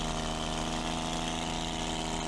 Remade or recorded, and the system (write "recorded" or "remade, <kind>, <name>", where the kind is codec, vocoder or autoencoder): recorded